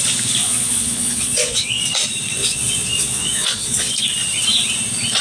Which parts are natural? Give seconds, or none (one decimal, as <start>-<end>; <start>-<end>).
0.0-0.4; 1.8-2.4; 3.9-5.2